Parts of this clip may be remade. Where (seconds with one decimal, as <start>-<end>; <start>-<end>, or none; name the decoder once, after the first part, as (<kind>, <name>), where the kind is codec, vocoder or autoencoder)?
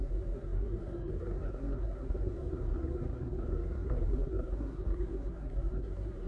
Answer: 0.0-6.3 (codec, SNAC)